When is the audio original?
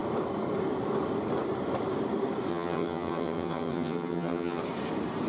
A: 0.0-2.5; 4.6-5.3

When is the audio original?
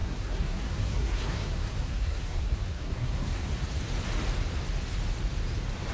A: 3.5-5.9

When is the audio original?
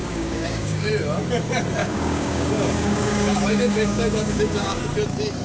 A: 0.9-1.8; 4.8-5.4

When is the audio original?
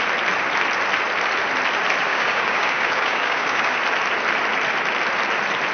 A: 0.0-2.1; 3.8-5.7